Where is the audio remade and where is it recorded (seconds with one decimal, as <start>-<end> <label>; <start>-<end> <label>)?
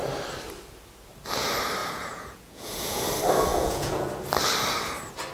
0.0-1.8 recorded; 1.8-3.0 remade; 3.0-3.5 recorded; 3.5-4.1 remade; 4.1-5.3 recorded